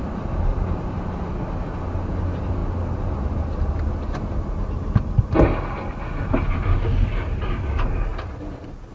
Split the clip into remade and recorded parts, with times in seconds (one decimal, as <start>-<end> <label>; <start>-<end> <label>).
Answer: 0.0-8.9 recorded